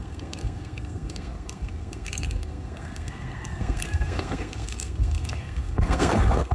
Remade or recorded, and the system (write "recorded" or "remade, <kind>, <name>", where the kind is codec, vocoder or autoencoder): remade, codec, SNAC